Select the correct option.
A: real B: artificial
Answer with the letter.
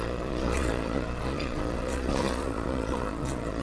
B